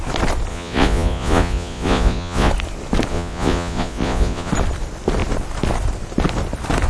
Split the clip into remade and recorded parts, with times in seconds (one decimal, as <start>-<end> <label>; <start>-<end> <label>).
0.0-0.5 recorded; 0.5-2.5 remade; 2.5-3.1 recorded; 3.1-4.5 remade; 4.5-6.9 recorded